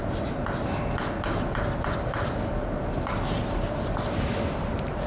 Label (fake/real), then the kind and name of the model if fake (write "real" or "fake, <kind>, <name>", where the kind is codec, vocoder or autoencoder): real